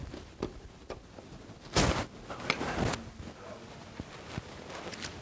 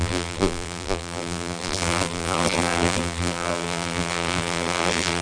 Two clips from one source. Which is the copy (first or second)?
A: second